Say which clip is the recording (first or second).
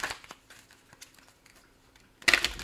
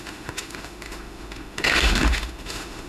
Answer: first